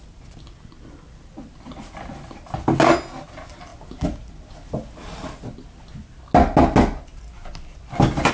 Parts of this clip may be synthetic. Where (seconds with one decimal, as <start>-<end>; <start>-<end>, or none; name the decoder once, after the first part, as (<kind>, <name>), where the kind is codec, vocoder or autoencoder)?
none